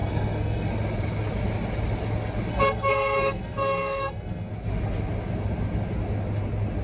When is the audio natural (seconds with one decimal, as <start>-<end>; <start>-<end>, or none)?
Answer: 0.7-2.5; 4.5-6.8